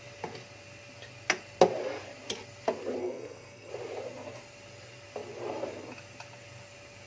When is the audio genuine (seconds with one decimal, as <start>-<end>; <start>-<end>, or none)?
0.0-3.0; 3.7-7.1

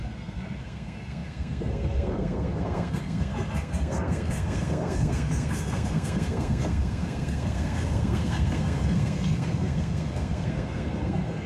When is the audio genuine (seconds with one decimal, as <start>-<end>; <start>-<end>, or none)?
none

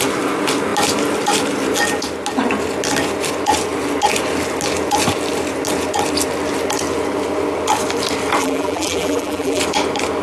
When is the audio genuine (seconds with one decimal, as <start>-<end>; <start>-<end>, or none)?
0.0-8.4; 9.6-10.2